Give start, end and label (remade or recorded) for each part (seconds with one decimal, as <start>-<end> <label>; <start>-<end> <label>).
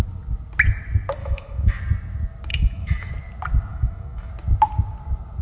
0.0-1.2 recorded; 1.2-1.8 remade; 1.8-2.5 recorded; 2.5-3.1 remade; 3.1-3.7 recorded; 3.7-4.3 remade; 4.3-5.4 recorded